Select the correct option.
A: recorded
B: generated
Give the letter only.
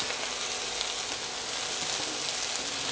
A